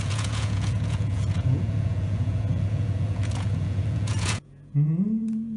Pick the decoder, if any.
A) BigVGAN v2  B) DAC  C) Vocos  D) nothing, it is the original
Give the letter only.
C